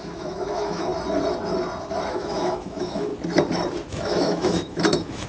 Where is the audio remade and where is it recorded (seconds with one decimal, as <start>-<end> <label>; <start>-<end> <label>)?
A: 0.0-0.9 remade; 0.9-2.1 recorded; 2.1-3.1 remade; 3.1-3.9 recorded; 3.9-5.3 remade